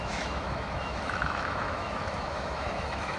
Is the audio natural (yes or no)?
no